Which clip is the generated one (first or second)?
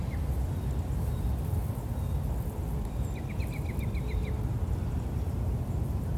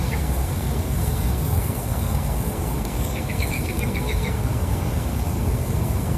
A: second